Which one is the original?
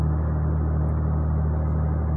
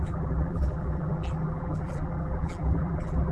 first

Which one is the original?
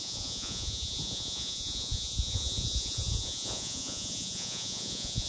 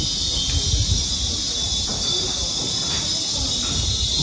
second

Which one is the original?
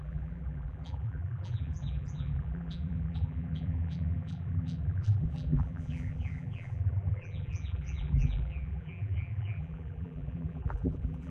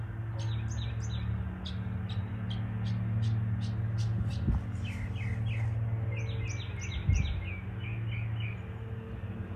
second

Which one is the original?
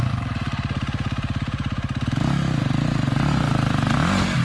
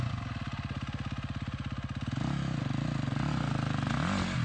second